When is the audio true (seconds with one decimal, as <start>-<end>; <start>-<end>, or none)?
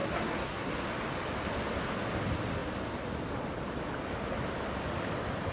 0.7-5.5